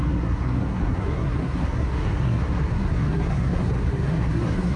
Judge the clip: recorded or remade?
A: remade